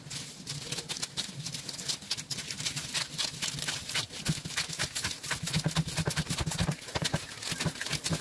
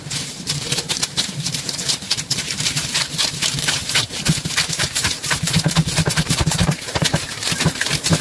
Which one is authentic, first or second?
first